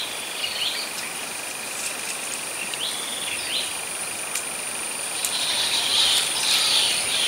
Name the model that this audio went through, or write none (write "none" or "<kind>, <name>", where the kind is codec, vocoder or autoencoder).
none